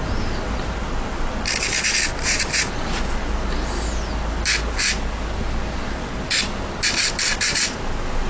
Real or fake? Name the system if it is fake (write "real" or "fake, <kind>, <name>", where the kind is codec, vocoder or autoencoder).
real